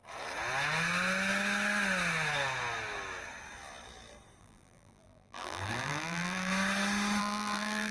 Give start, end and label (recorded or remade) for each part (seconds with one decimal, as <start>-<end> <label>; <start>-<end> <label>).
0.0-4.4 recorded; 4.4-6.5 remade; 6.5-7.2 recorded; 7.2-7.9 remade

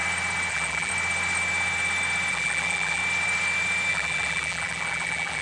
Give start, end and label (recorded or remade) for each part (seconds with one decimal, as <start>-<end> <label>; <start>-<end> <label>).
0.0-0.5 recorded; 0.5-0.9 remade; 0.9-2.3 recorded; 2.3-3.0 remade; 3.0-3.9 recorded; 3.9-5.4 remade